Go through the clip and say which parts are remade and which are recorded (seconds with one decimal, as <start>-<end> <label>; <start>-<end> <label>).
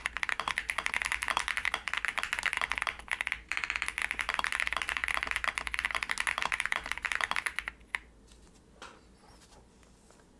0.0-10.4 recorded